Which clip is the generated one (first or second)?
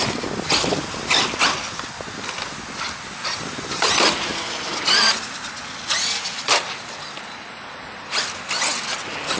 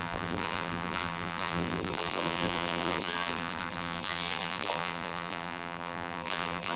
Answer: second